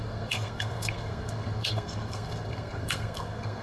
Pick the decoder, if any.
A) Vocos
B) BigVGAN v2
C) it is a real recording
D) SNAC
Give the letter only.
D